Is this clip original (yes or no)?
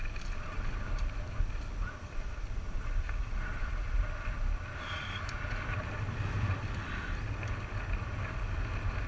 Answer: yes